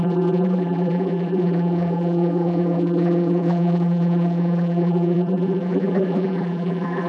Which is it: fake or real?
fake